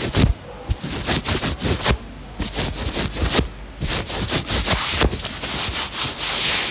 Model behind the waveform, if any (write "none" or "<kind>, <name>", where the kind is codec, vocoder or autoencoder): none